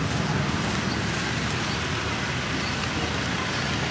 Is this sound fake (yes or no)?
no